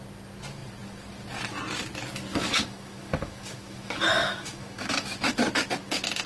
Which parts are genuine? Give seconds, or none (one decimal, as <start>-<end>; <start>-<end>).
0.0-2.3; 5.3-6.3